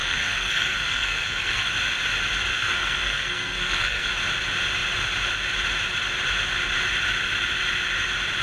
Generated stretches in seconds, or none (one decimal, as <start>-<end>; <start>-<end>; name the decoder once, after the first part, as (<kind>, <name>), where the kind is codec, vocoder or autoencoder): 0.0-1.7 (codec, SNAC); 2.5-4.1